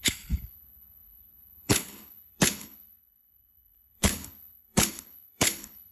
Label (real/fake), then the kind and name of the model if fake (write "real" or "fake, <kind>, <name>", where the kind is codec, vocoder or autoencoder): fake, codec, HILCodec